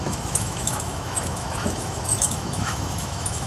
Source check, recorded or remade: remade